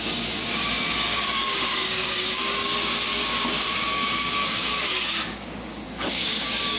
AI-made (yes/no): yes